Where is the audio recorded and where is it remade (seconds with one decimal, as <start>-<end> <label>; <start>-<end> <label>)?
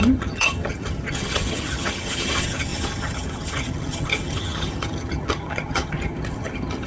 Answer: 0.0-6.9 remade